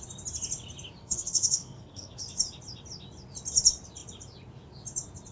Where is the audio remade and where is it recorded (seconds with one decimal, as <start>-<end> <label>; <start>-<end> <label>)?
0.0-1.0 recorded; 1.0-2.2 remade; 2.2-5.3 recorded